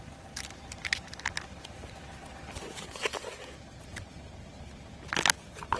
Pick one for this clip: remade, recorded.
recorded